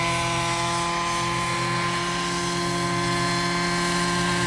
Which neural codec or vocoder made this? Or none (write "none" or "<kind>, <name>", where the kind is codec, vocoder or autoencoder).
none